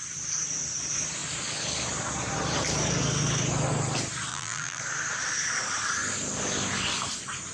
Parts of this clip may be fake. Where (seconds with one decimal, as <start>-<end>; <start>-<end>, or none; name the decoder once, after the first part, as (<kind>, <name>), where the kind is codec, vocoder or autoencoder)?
4.3-4.8 (vocoder, BigVGAN v2)